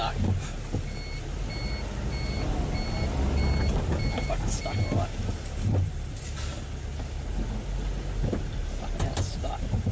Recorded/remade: recorded